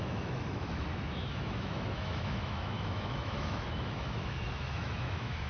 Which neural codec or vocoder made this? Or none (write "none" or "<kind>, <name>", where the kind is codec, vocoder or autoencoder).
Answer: autoencoder, DAC-VAE